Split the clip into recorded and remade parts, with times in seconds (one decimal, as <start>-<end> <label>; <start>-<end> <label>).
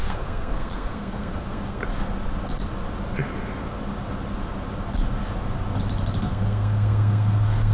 0.0-1.8 remade; 1.8-6.2 recorded; 6.2-7.7 remade